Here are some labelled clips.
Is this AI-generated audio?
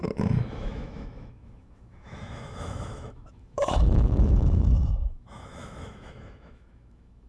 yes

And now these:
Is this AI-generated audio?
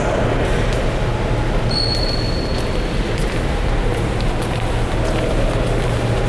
no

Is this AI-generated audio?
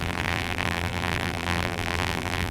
yes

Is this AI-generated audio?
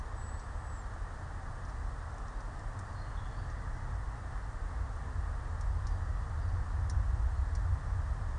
no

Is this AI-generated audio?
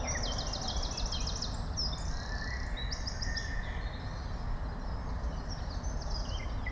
no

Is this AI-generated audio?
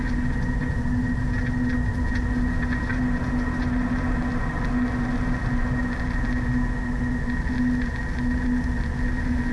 no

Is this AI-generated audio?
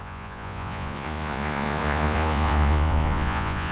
yes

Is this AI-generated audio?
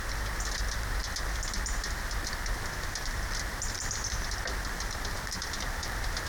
yes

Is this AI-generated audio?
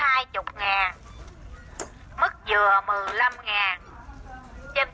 yes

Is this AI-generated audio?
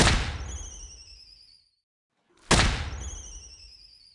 no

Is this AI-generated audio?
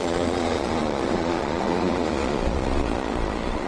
yes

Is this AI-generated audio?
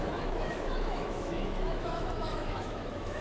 yes